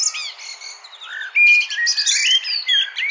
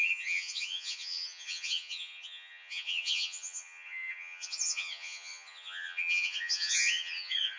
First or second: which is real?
first